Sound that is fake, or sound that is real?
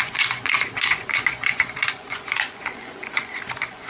fake